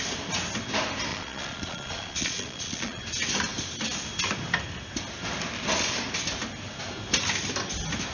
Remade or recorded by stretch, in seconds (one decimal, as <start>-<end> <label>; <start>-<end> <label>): 0.0-1.1 recorded; 1.1-3.0 remade; 3.0-8.1 recorded